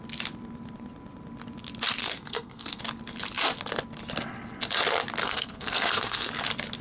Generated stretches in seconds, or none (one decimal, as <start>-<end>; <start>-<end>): 2.0-2.8; 5.2-6.3